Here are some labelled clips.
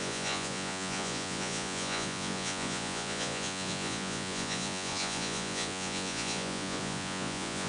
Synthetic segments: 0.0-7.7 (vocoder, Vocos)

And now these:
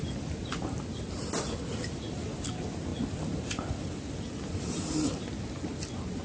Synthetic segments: none

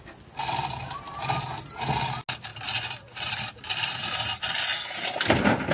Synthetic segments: none